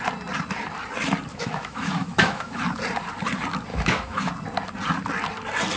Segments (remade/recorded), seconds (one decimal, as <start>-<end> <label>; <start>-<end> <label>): 0.0-1.3 recorded; 1.3-2.6 remade; 2.6-3.7 recorded; 3.7-4.3 remade; 4.3-5.8 recorded